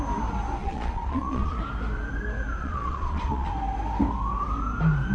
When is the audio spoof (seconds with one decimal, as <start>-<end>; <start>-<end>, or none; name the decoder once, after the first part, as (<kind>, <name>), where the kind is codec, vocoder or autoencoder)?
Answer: 0.6-1.6 (vocoder, Vocos); 2.6-3.5